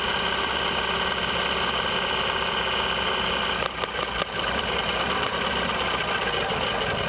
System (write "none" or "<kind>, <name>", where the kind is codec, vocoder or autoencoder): none